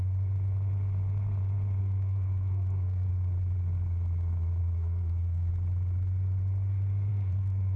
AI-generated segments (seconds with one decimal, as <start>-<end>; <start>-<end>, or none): 1.8-3.1; 4.6-5.5; 7.1-7.8